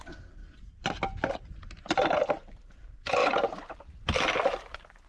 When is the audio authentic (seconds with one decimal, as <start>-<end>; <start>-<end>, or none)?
0.0-0.4; 1.3-3.2; 3.8-5.1